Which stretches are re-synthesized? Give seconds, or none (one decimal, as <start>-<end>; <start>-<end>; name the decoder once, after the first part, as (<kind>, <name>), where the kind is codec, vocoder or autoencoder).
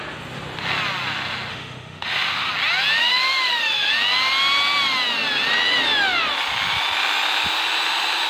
1.5-2.5 (autoencoder, DAC-VAE); 3.0-3.9